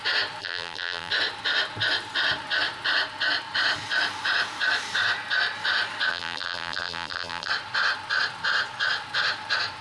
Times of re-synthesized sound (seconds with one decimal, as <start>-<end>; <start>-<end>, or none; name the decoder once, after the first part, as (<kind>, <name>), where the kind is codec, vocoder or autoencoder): 0.4-1.1 (vocoder, BigVGAN v2); 6.1-7.5